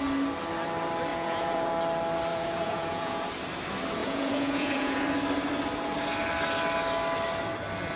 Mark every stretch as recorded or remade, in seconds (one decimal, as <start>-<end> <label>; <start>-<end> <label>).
0.0-1.1 recorded; 1.1-1.7 remade; 1.7-2.3 recorded; 2.3-3.3 remade; 3.3-4.0 recorded; 4.0-5.0 remade; 5.0-8.0 recorded